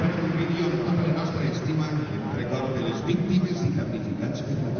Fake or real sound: real